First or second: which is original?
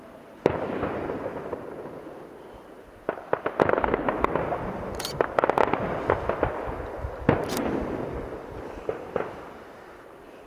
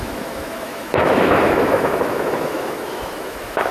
first